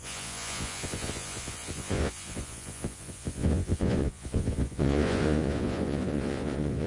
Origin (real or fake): fake